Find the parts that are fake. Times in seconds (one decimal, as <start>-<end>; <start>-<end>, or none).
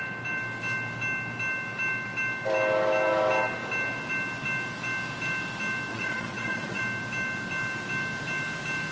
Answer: 5.9-6.8